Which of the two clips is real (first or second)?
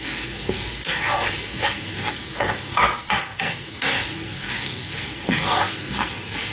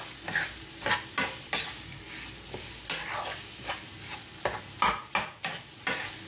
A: second